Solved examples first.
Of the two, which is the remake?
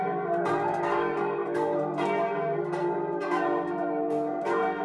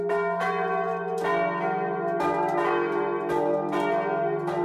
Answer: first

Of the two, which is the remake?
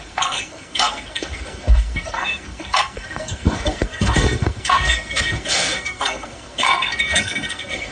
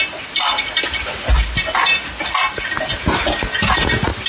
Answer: first